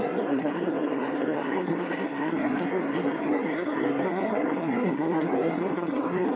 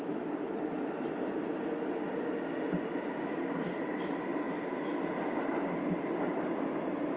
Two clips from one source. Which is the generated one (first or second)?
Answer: first